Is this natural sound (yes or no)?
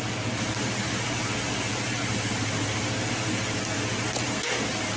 yes